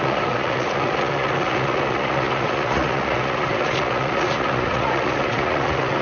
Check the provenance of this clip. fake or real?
fake